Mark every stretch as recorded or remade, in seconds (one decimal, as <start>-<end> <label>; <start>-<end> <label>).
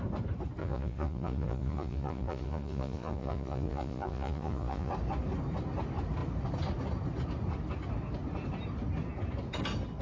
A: 0.0-0.6 recorded; 0.6-4.9 remade; 4.9-10.0 recorded